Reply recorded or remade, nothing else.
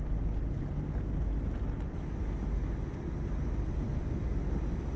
recorded